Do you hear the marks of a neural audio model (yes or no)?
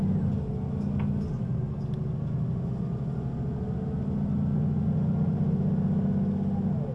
no